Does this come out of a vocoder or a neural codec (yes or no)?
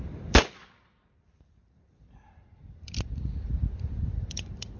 yes